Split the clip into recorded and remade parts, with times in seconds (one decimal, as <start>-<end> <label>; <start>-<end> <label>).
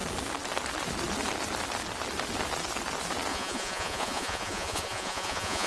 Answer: 0.0-3.3 recorded; 3.3-5.7 remade